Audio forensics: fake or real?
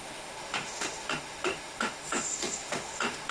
fake